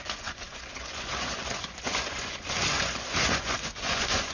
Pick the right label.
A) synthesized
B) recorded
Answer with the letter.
A